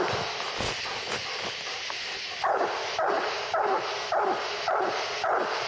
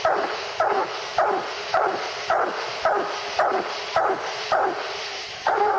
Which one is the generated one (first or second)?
second